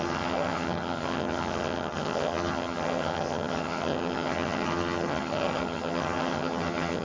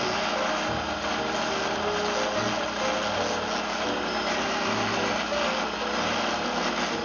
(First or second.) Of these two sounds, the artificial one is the first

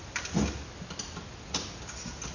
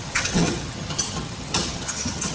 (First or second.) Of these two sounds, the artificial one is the second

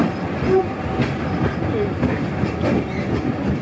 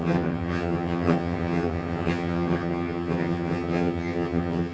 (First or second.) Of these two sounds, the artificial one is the second